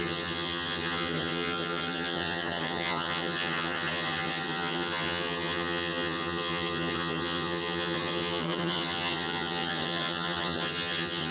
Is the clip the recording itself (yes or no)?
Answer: no